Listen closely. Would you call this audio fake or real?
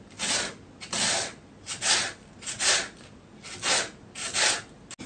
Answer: real